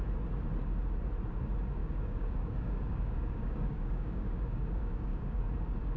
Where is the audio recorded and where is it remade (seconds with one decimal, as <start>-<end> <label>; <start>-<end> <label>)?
0.0-1.8 recorded; 1.8-5.4 remade; 5.4-6.0 recorded